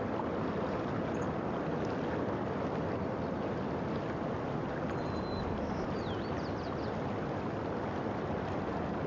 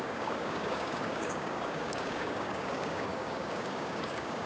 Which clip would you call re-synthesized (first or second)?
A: second